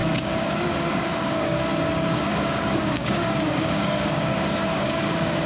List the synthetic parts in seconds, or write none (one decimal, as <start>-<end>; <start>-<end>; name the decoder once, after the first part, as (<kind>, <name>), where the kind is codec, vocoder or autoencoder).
0.0-5.5 (codec, DAC)